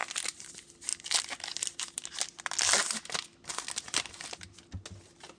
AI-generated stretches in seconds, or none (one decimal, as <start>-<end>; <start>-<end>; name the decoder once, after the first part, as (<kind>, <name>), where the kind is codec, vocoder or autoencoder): none